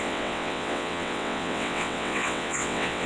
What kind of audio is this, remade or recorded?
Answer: remade